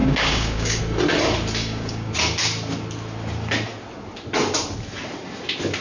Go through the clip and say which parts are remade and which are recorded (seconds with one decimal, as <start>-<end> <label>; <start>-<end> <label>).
0.0-0.8 remade; 0.8-1.6 recorded; 1.6-2.1 remade; 2.1-5.8 recorded